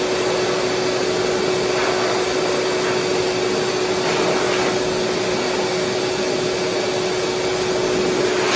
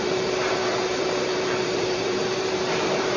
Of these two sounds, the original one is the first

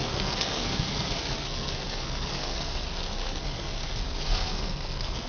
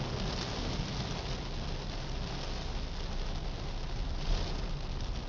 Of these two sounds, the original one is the second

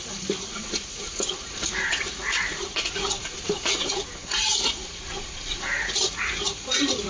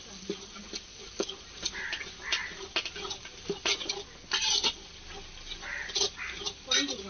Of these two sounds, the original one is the second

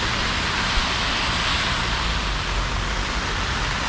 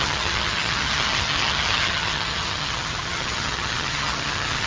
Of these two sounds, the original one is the first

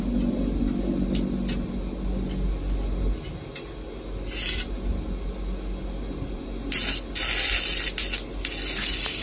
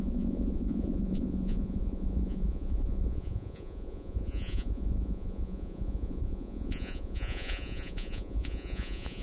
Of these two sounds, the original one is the first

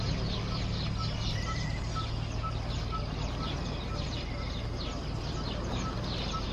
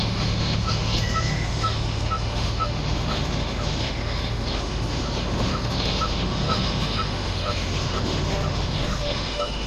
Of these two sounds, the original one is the first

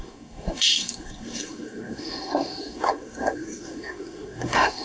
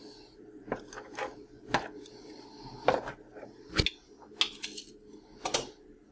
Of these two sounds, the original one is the second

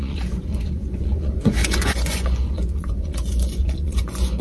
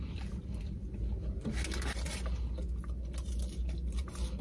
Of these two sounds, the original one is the second